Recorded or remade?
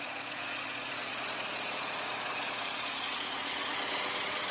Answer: remade